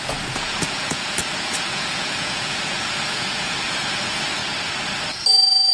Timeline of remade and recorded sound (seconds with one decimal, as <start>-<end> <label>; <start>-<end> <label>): 0.0-4.4 remade; 4.4-5.7 recorded